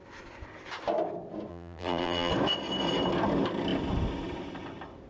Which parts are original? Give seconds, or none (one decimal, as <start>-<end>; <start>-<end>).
0.0-1.5; 2.3-5.1